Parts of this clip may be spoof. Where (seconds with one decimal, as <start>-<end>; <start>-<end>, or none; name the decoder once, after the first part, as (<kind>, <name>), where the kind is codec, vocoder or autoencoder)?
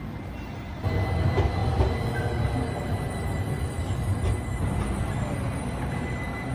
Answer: none